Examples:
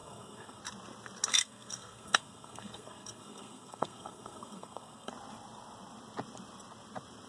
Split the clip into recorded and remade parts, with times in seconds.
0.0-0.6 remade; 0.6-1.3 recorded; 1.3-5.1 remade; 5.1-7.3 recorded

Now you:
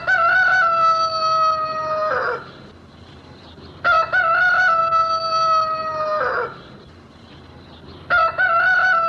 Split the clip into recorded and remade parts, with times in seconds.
0.0-9.1 recorded

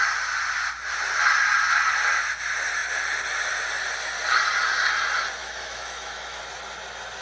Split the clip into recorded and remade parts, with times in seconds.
0.0-5.4 recorded; 5.4-6.4 remade; 6.4-7.2 recorded

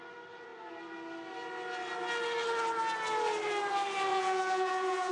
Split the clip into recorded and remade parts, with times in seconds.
0.0-4.1 recorded; 4.1-5.1 remade

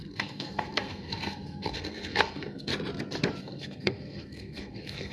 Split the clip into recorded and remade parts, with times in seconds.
0.0-2.7 remade; 2.7-3.4 recorded; 3.4-5.1 remade

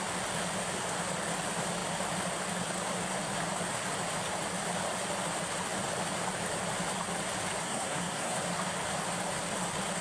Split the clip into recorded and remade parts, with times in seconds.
0.0-7.6 recorded; 7.6-8.4 remade; 8.4-10.0 recorded